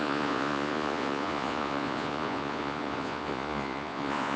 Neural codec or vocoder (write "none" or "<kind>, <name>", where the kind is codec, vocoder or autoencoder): vocoder, Vocos